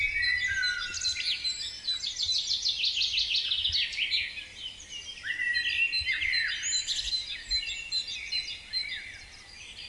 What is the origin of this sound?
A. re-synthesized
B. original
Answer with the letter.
B